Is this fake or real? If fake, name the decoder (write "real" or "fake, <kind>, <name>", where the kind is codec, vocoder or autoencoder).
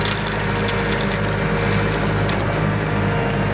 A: real